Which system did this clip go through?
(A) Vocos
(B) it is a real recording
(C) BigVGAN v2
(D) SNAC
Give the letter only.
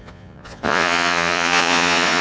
A